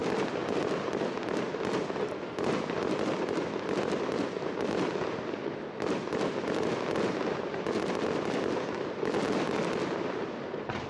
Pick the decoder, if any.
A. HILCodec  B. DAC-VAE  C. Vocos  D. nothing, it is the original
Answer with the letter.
D